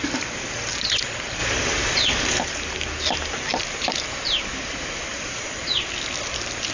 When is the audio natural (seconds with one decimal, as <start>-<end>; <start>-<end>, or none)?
0.0-1.4; 2.4-3.5; 5.6-6.7